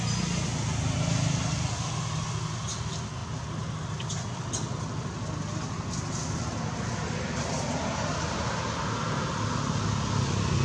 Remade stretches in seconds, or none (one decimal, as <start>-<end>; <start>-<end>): none